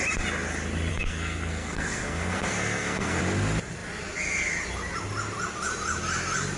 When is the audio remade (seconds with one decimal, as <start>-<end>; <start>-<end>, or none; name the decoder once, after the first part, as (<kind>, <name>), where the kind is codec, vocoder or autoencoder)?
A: 0.9-3.2 (codec, SNAC)